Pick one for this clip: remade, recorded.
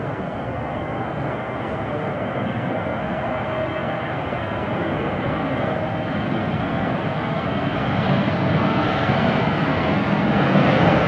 remade